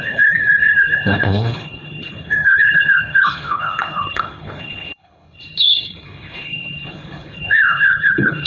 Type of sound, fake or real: fake